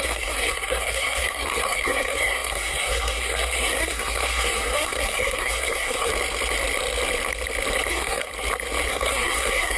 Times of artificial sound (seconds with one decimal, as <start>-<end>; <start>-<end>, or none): 0.0-6.1; 7.9-8.3; 8.9-9.8